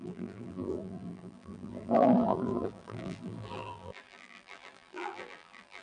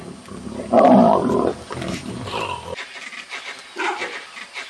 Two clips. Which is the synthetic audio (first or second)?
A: first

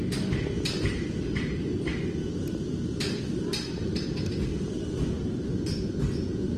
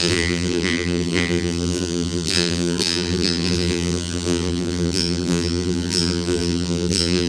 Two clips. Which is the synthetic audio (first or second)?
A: second